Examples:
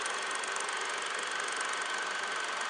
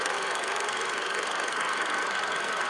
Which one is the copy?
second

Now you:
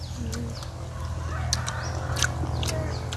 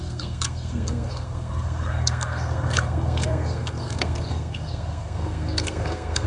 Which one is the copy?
second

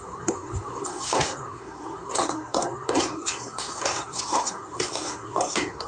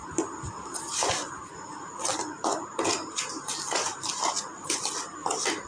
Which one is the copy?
first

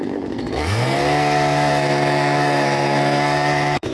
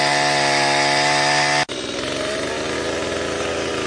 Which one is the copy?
first